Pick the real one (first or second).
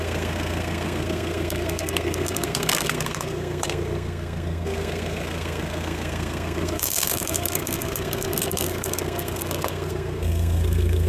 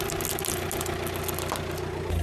second